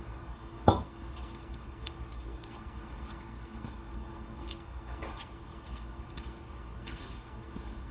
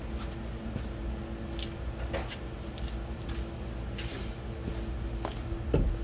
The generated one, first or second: first